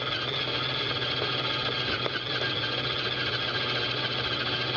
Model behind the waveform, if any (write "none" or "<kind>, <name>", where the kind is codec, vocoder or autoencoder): none